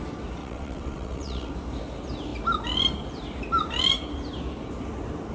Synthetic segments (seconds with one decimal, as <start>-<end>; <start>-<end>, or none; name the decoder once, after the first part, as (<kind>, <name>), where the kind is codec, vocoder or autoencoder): 0.4-1.5 (vocoder, WaveNeXt)

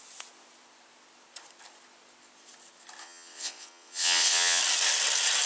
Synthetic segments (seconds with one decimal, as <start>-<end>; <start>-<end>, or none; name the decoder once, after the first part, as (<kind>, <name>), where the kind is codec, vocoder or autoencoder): 3.0-4.6 (vocoder, WaveNeXt)

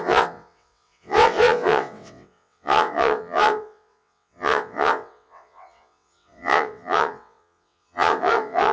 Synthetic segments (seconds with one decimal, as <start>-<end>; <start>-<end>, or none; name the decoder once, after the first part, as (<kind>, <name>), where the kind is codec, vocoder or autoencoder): 0.0-8.7 (vocoder, WaveNeXt)

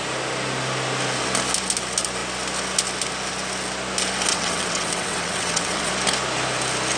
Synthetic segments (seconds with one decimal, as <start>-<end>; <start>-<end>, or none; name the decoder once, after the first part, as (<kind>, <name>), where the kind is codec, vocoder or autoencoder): 4.3-5.9 (vocoder, WaveNeXt)